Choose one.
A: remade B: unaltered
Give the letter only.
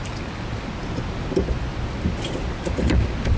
B